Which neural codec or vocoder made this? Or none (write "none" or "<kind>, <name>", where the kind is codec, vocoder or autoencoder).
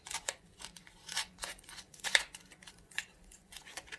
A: vocoder, Vocos